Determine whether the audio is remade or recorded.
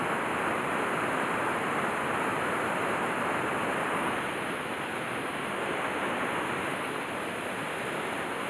recorded